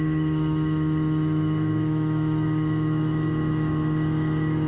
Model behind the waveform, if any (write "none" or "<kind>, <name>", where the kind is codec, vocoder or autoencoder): autoencoder, DAC-VAE